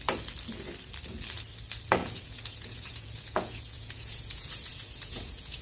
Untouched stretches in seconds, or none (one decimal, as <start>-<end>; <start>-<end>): 0.0-2.0